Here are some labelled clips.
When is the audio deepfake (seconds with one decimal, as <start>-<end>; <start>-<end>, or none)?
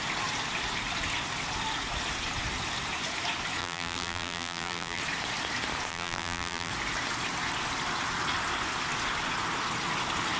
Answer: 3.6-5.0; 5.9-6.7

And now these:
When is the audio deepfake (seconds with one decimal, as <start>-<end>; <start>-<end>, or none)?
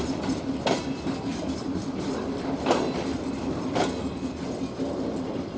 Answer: 1.3-3.5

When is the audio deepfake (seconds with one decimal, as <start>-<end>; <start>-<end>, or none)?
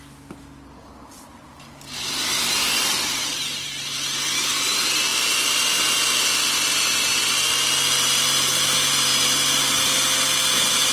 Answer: none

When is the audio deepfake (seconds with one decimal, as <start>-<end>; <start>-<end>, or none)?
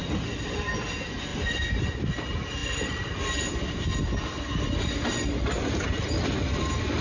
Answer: none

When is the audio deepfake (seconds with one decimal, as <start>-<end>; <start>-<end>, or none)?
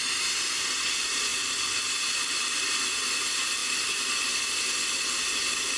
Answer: 0.0-1.3; 3.0-5.8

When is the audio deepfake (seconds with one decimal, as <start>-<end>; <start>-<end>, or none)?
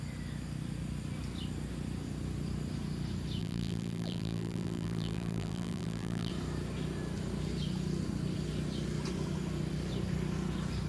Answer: 3.4-6.3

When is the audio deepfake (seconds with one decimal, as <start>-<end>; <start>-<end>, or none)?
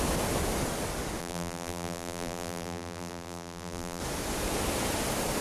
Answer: 1.2-4.0